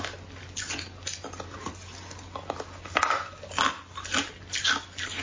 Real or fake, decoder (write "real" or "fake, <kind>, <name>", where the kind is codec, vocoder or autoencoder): real